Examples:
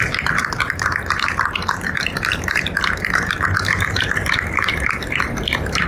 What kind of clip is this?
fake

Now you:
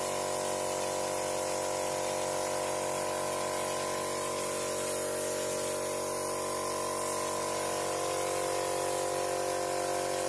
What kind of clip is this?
real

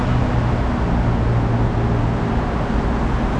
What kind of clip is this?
real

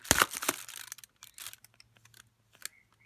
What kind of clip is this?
real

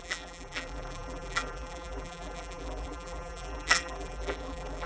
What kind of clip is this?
fake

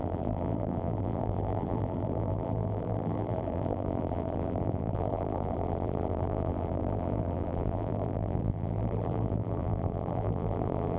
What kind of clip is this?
fake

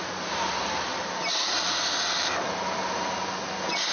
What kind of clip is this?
fake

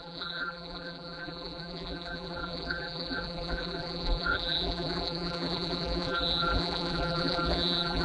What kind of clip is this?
fake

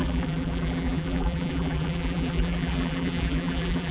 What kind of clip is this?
fake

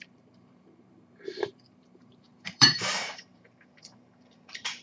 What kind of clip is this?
fake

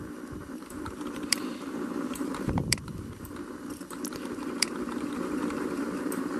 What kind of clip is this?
fake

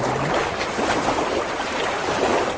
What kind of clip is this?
real